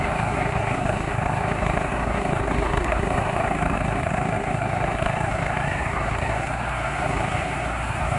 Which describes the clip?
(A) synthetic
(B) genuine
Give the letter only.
A